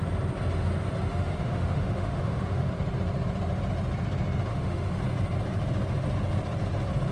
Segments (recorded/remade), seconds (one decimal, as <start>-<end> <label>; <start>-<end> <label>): 0.0-1.1 recorded; 1.1-2.7 remade; 2.7-4.5 recorded; 4.5-5.0 remade; 5.0-7.1 recorded